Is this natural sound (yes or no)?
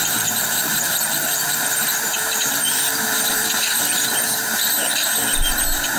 no